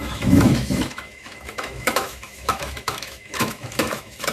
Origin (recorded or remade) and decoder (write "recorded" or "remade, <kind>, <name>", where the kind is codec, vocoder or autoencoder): remade, autoencoder, DAC-VAE